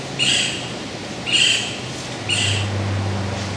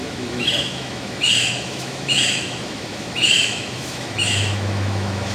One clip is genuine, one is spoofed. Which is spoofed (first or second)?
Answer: second